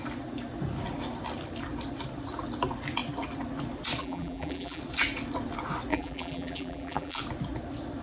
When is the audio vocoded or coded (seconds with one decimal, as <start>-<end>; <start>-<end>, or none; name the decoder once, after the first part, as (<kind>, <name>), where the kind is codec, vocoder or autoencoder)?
4.0-4.8 (vocoder, BigVGAN v2); 5.9-7.2